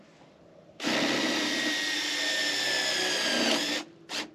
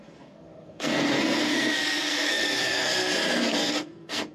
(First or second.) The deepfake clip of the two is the second